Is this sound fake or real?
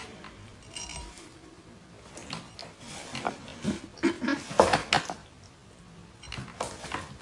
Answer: real